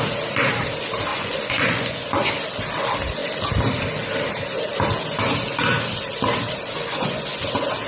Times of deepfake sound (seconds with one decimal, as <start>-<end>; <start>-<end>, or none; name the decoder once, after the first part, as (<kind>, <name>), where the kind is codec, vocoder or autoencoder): 1.1-2.1 (vocoder, Vocos); 6.8-7.4